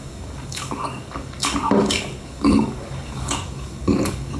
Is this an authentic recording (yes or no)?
no